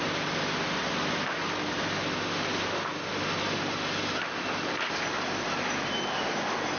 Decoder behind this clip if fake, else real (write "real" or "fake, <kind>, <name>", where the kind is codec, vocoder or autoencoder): real